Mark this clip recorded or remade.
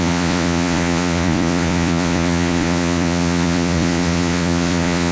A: remade